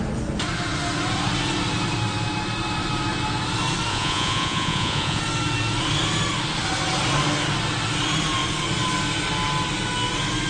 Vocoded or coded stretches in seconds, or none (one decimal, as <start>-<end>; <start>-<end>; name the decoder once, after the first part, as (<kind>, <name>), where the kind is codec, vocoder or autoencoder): 3.9-5.2 (vocoder, Vocos)